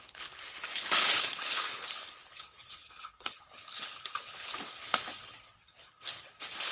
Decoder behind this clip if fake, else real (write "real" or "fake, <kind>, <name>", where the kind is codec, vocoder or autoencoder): fake, codec, HILCodec